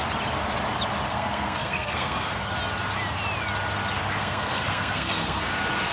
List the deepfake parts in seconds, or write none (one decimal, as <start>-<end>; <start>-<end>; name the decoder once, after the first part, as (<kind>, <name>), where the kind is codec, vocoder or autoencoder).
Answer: 1.1-2.5 (codec, SNAC); 4.2-5.5